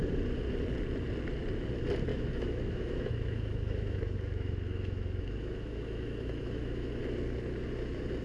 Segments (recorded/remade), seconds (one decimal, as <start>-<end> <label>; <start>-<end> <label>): 0.0-2.1 recorded; 2.1-7.0 remade; 7.0-8.2 recorded